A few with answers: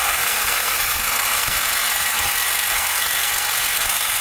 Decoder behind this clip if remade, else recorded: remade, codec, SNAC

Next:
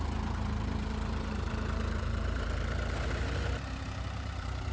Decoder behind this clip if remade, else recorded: remade, vocoder, BigVGAN v2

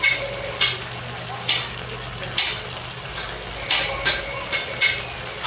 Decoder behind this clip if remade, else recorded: recorded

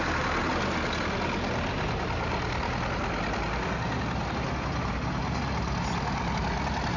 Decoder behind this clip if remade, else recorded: recorded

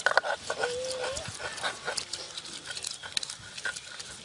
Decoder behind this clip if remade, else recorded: recorded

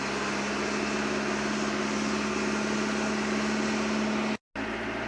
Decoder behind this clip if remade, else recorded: recorded